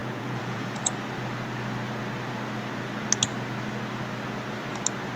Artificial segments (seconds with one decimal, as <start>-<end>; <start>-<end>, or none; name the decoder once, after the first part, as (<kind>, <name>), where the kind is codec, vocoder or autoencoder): 0.0-0.9 (vocoder, Vocos)